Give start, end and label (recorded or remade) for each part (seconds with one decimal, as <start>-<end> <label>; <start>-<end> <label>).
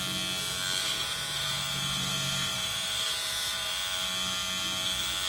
0.0-0.8 recorded; 0.8-3.7 remade; 3.7-5.3 recorded